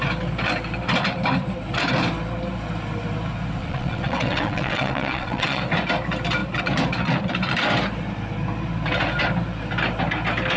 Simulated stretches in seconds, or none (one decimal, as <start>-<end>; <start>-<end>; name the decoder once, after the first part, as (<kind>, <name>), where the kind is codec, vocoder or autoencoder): 3.6-5.6 (vocoder, WaveNeXt)